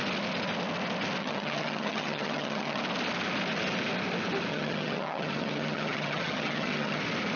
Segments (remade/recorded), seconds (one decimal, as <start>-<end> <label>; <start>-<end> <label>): 0.0-1.2 recorded; 1.2-2.8 remade; 2.8-4.5 recorded; 4.5-7.0 remade; 7.0-7.4 recorded